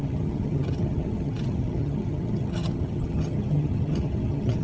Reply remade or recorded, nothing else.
remade